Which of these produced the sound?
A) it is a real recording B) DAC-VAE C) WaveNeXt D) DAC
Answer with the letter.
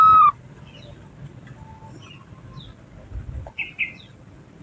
A